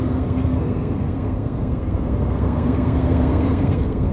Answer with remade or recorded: remade